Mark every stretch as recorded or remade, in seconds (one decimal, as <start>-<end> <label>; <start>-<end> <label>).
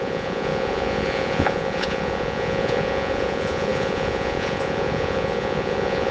0.0-6.1 remade